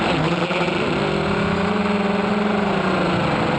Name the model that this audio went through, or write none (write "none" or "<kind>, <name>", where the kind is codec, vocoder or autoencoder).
none